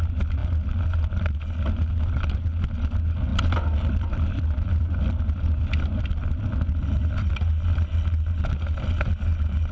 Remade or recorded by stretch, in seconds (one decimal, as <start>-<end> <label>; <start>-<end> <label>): 0.0-3.3 recorded; 3.3-7.3 remade; 7.3-9.7 recorded